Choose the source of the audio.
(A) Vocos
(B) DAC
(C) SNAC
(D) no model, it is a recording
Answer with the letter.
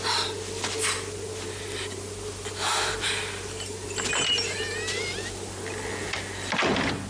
D